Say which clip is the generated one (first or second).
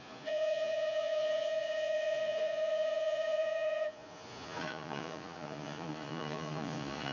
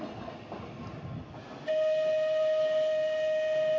first